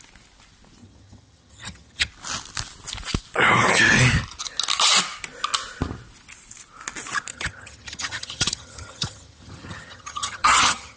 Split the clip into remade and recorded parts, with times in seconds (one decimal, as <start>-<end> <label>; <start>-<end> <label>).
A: 0.0-0.8 recorded; 0.8-2.1 remade; 2.1-7.3 recorded; 7.3-11.0 remade